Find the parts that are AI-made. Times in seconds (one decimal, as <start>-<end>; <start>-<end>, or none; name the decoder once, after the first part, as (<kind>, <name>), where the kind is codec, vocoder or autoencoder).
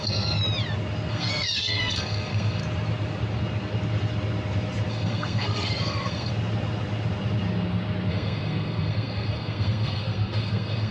0.0-0.4 (codec, SNAC); 1.1-2.6; 4.9-6.3; 8.1-10.9